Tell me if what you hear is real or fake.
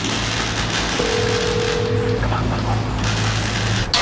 real